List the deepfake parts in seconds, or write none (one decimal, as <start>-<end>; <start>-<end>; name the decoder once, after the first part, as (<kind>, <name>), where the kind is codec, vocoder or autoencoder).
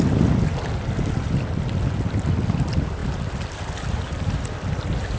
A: none